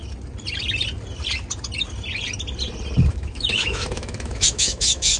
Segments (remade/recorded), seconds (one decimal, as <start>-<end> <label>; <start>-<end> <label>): 0.0-3.1 recorded; 3.1-5.2 remade